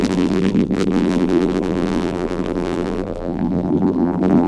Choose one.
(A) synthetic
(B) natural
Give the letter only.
A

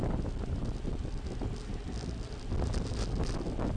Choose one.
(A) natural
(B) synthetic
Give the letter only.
A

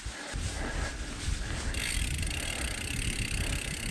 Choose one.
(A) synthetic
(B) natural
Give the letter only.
B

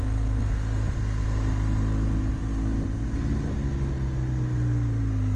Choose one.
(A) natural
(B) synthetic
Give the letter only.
A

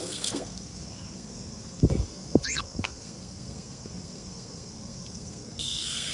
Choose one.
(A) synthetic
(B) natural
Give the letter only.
A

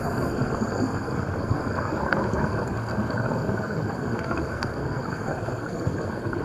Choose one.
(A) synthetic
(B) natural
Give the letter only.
A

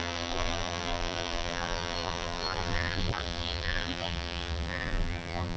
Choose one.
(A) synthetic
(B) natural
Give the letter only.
A